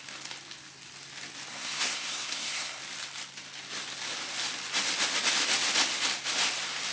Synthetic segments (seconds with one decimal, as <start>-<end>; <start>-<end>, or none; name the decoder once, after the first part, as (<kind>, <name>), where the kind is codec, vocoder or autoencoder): 1.5-2.8 (codec, SNAC)